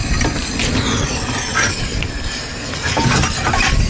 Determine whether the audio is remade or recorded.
recorded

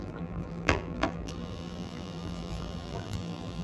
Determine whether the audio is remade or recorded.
remade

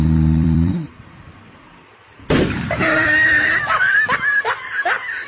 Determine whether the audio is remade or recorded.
remade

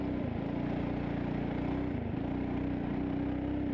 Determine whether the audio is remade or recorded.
recorded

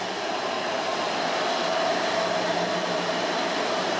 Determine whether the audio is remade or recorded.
remade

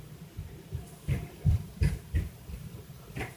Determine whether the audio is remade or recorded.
remade